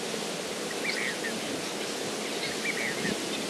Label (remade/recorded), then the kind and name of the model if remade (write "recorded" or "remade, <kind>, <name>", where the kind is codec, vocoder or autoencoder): recorded